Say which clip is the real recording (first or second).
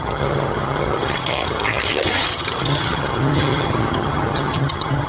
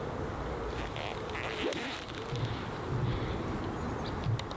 second